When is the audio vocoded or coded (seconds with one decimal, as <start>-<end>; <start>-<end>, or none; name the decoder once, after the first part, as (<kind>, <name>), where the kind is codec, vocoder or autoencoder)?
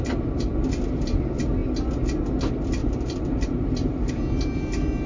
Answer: 2.8-4.1 (vocoder, BigVGAN v2)